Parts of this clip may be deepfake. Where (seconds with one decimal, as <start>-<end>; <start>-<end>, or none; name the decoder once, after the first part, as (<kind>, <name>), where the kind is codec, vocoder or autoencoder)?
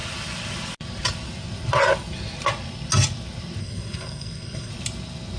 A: 3.6-4.7 (codec, SNAC)